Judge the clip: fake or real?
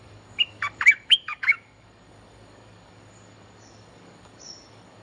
fake